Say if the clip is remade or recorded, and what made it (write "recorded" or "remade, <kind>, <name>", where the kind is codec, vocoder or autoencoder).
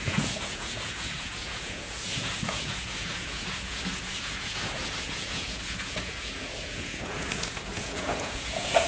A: remade, vocoder, Vocos